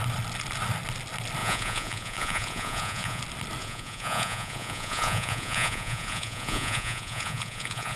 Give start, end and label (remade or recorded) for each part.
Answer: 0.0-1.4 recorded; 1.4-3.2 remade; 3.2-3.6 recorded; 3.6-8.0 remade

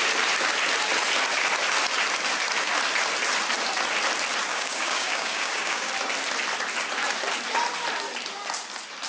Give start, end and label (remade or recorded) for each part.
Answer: 0.0-4.5 recorded; 4.5-5.9 remade; 5.9-9.1 recorded

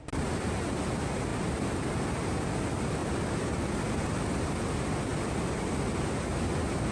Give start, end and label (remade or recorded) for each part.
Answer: 0.0-6.9 recorded